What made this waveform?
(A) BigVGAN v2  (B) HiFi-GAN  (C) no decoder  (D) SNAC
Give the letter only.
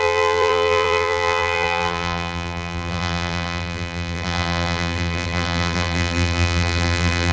A